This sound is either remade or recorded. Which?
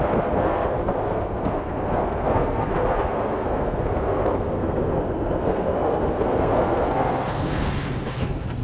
remade